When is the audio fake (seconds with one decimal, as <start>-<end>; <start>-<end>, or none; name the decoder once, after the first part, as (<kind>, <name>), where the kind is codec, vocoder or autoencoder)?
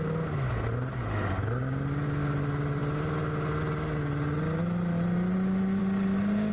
none